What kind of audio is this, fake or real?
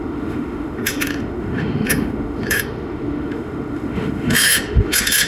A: fake